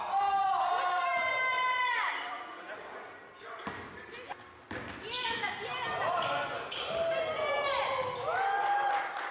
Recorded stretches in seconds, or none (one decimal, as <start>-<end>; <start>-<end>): 0.0-9.3